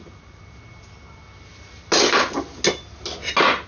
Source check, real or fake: real